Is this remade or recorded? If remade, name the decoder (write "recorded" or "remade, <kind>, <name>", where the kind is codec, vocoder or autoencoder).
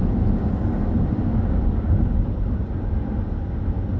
recorded